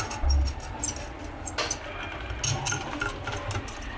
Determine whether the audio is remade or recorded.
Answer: recorded